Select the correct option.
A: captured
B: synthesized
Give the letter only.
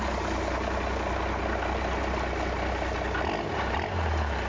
A